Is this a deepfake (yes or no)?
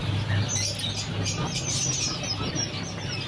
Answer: no